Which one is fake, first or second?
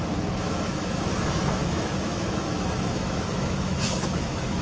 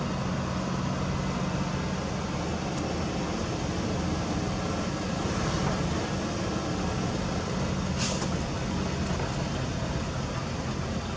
first